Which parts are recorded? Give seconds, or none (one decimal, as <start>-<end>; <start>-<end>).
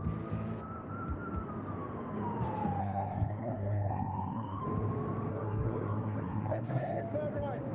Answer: 0.0-2.8; 4.6-5.3; 7.0-7.7